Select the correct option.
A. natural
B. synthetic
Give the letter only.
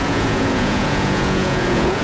B